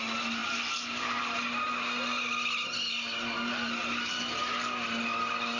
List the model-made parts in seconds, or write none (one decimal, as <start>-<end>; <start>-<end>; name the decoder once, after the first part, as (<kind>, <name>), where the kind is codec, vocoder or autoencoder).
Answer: none